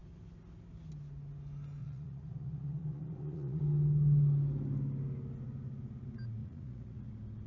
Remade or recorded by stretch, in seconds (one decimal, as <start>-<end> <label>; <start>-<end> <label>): 0.0-1.8 recorded; 1.8-3.6 remade; 3.6-6.4 recorded; 6.4-7.1 remade; 7.1-7.5 recorded